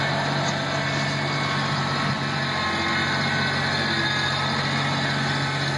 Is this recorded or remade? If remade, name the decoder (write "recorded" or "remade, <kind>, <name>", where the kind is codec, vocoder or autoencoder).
recorded